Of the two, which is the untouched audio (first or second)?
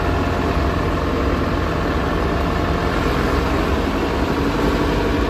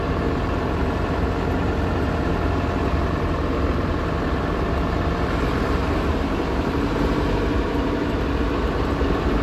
first